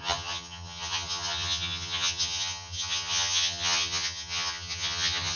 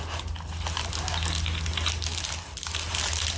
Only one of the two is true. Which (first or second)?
second